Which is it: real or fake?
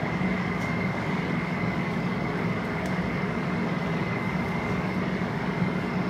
fake